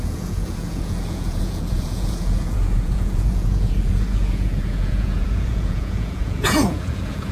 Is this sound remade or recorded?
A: remade